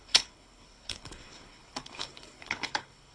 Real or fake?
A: fake